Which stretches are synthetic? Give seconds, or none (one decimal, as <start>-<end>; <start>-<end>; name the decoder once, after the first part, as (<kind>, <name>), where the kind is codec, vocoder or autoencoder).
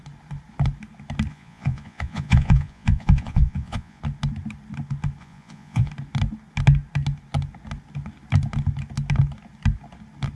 1.3-4.0 (vocoder, Vocos); 5.2-5.9